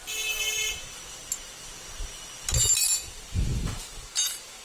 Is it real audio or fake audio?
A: real